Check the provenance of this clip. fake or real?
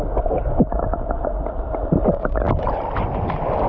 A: real